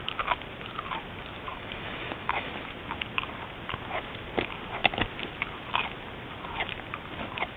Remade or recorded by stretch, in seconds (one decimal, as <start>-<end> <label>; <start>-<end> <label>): 0.0-1.5 recorded; 1.5-2.5 remade; 2.5-7.6 recorded